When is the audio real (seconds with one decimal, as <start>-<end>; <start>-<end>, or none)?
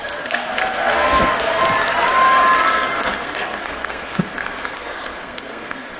1.6-2.6